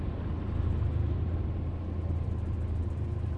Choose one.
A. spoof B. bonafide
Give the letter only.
B